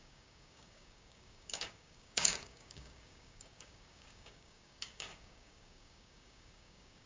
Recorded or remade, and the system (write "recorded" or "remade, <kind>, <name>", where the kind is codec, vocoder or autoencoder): remade, codec, DAC